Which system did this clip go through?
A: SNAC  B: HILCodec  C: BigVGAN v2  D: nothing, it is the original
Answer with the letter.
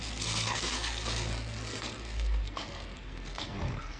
A